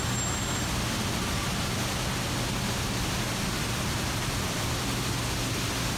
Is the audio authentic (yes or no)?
yes